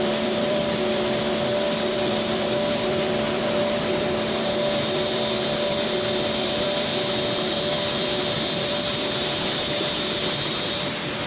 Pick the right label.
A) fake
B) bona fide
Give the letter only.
A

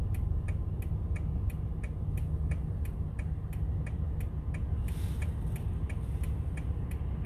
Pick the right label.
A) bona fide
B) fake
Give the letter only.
A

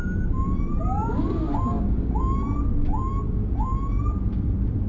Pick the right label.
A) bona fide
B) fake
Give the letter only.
A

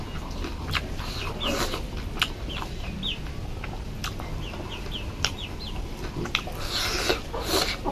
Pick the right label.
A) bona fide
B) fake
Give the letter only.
A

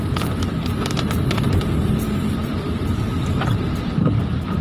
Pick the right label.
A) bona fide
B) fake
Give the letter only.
B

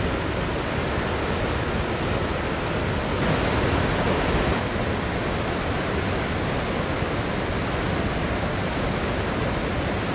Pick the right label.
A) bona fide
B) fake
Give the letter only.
A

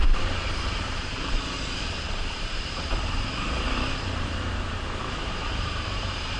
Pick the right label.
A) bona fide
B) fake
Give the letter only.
B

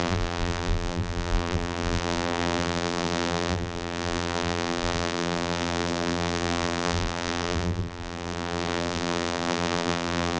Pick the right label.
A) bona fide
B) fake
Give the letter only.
B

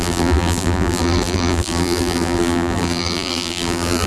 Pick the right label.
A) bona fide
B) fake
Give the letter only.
B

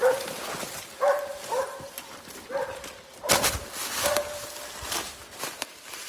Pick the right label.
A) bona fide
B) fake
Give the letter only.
B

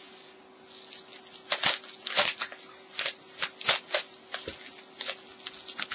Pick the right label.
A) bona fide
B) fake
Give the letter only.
A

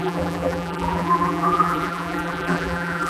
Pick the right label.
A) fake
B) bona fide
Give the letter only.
A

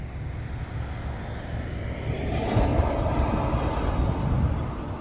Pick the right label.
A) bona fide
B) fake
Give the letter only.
A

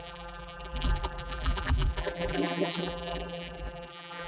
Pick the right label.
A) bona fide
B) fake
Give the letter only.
B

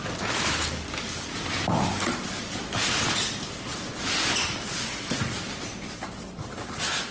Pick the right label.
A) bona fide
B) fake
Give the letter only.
A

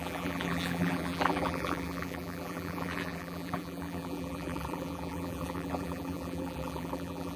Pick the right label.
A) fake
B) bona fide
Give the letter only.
A